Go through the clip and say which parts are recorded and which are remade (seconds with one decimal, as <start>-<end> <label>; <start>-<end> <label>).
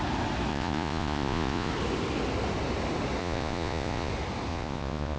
0.0-0.5 recorded; 0.5-1.7 remade; 1.7-3.2 recorded; 3.2-4.1 remade; 4.1-4.5 recorded; 4.5-5.2 remade